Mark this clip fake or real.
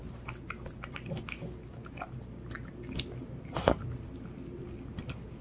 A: real